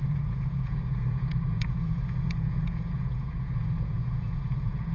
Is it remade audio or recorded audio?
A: remade